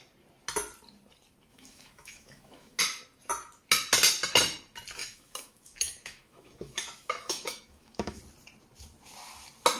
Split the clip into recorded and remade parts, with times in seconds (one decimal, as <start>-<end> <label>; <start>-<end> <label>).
0.0-1.5 recorded; 1.5-2.8 remade; 2.8-5.0 recorded; 5.0-8.2 remade; 8.2-9.8 recorded